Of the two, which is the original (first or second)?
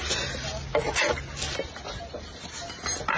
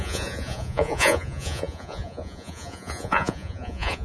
first